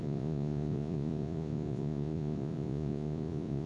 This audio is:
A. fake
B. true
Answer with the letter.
A